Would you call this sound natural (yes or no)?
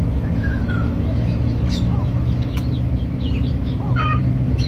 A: no